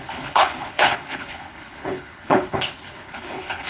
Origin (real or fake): fake